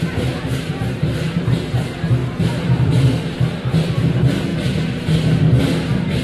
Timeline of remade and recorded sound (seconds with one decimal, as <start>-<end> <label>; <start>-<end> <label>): 0.0-4.5 remade; 4.5-6.2 recorded